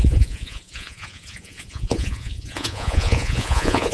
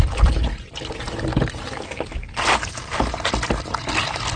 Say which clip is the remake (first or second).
first